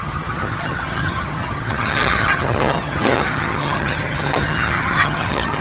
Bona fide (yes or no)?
no